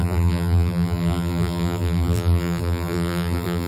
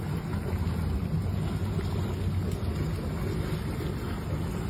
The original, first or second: second